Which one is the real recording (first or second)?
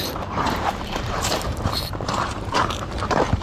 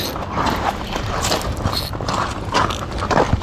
second